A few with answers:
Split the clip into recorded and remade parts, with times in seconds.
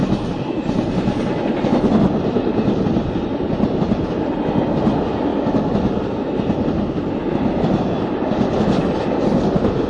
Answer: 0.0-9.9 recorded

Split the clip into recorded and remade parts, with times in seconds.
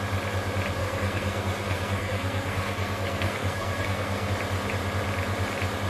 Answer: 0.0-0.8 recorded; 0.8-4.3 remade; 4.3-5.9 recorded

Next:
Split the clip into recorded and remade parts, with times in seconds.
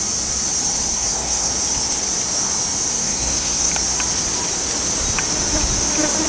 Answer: 0.0-0.9 recorded; 0.9-1.5 remade; 1.5-2.9 recorded; 2.9-3.7 remade; 3.7-6.3 recorded